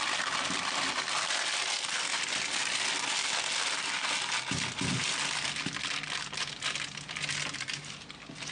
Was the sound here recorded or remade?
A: recorded